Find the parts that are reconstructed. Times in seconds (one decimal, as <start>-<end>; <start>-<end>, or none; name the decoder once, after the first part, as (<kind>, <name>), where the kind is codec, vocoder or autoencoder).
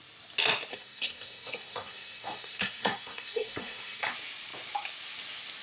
0.7-4.1 (codec, SNAC)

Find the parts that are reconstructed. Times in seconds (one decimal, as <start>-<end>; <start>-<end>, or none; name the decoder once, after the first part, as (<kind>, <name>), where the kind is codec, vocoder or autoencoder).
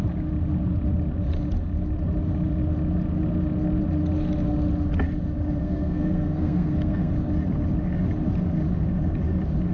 5.6-7.1 (codec, SNAC)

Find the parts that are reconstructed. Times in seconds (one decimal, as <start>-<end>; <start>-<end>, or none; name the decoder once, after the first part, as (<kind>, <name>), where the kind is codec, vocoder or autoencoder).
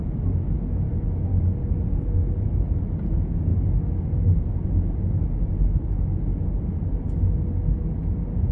none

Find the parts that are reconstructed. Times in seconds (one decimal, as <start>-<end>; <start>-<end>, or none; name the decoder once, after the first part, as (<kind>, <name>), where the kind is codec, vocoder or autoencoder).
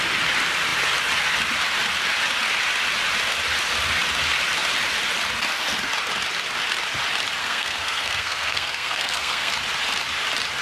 7.4-9.5 (codec, SNAC)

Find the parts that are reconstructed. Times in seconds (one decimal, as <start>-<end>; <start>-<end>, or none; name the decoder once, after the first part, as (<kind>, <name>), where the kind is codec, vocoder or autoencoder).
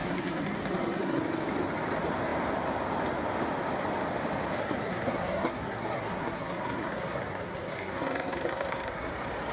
0.0-1.2 (codec, SNAC); 4.6-9.1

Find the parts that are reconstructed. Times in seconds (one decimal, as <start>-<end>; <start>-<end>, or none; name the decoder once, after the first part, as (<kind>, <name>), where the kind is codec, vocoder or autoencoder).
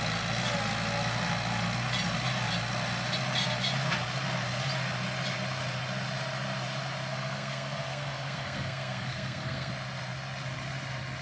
7.1-9.7 (codec, SNAC)